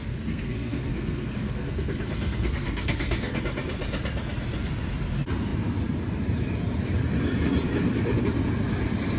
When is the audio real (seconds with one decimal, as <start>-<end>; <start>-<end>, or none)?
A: 3.4-9.2